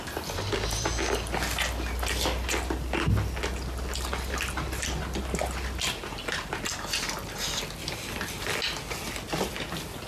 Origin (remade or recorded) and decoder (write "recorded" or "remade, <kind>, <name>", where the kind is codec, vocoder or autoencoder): recorded